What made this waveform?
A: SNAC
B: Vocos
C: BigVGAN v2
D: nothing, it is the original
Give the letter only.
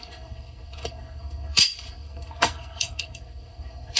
A